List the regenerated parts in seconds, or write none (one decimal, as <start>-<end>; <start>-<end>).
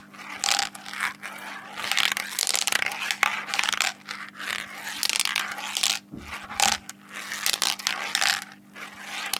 none